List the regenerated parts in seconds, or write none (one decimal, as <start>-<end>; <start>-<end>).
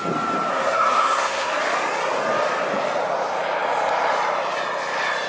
0.5-1.5